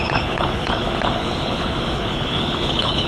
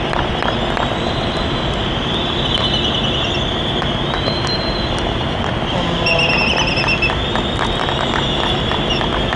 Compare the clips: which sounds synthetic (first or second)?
first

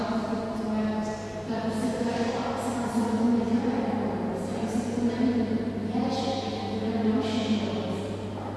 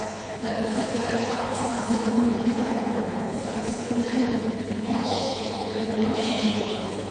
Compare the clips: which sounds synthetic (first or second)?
second